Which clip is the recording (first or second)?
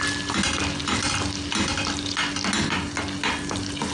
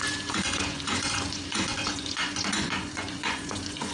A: first